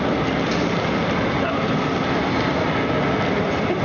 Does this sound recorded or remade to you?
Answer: recorded